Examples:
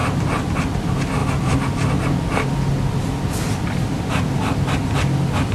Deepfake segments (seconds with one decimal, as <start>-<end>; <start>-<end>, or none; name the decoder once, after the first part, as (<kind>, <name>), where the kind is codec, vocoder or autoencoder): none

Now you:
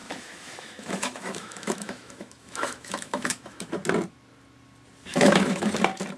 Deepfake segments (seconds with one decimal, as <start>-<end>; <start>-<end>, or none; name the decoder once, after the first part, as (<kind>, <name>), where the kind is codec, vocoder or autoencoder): 0.0-3.7 (autoencoder, DAC-VAE); 5.1-5.7

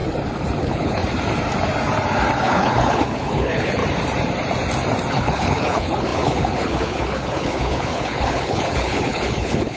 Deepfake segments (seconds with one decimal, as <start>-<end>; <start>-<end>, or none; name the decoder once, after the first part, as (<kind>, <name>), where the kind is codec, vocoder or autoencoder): 0.6-1.0 (codec, HILCodec); 2.4-3.8; 5.1-9.8

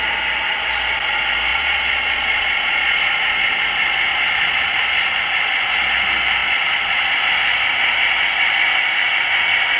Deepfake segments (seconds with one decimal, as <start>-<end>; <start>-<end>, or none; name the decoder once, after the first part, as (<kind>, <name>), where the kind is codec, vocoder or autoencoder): 1.5-3.6 (vocoder, Vocos); 4.1-5.2; 6.4-7.2